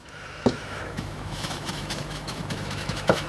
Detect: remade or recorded remade